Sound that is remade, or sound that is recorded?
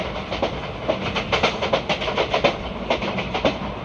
recorded